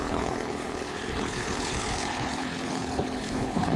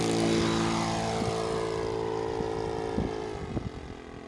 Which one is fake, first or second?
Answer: first